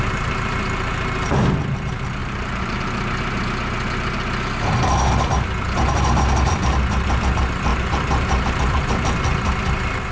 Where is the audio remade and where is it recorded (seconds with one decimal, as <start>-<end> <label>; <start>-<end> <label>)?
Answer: 0.0-2.2 recorded; 2.2-2.8 remade; 2.8-7.7 recorded; 7.7-8.9 remade; 8.9-10.1 recorded